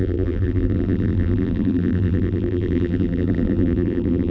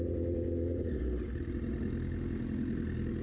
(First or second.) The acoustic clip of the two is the second